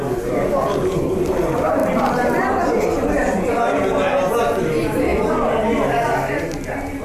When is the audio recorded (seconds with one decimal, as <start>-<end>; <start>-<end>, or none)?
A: 0.0-7.0